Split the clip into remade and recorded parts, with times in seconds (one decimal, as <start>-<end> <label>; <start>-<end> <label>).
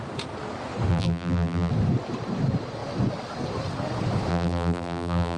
0.0-0.9 recorded; 0.9-1.7 remade; 1.7-4.3 recorded; 4.3-5.4 remade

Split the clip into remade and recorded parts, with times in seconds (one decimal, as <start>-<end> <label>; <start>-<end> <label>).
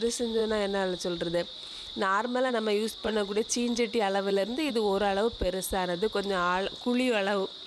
0.0-3.0 recorded; 3.0-4.7 remade; 4.7-7.7 recorded